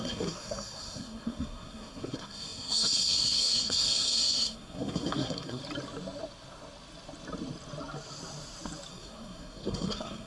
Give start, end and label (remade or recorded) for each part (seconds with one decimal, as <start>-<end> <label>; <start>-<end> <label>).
0.0-5.6 remade; 5.6-8.9 recorded; 8.9-10.3 remade